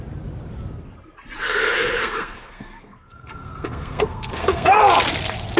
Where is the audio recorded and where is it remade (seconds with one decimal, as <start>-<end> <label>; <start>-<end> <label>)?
0.0-1.4 recorded; 1.4-4.8 remade; 4.8-5.6 recorded